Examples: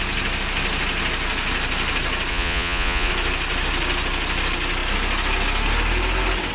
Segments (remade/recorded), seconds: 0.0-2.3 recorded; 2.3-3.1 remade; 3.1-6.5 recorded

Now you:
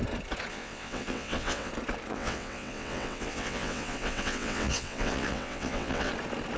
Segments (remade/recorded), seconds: 0.0-0.5 recorded; 0.5-1.7 remade; 1.7-2.1 recorded; 2.1-6.1 remade; 6.1-6.6 recorded

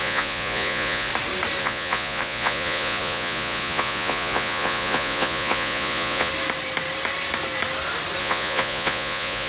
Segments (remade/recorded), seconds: 0.0-1.1 remade; 1.1-1.6 recorded; 1.6-6.3 remade; 6.3-8.2 recorded; 8.2-9.5 remade

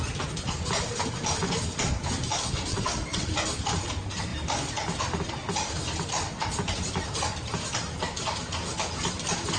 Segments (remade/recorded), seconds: 0.0-2.7 recorded; 2.7-3.3 remade; 3.3-9.6 recorded

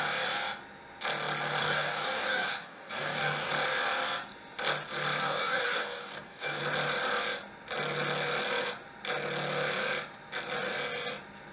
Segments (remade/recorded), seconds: 0.0-1.6 recorded; 1.6-3.5 remade; 3.5-5.2 recorded; 5.2-6.6 remade; 6.6-11.5 recorded

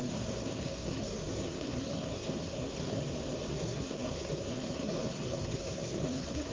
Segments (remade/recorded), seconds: 0.0-3.0 remade; 3.0-3.5 recorded; 3.5-6.5 remade

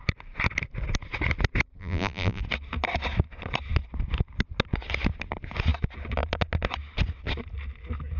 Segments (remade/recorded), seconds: 0.0-1.8 recorded; 1.8-2.4 remade; 2.4-8.2 recorded

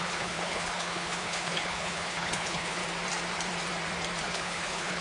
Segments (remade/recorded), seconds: 0.0-2.8 remade; 2.8-4.2 recorded; 4.2-5.0 remade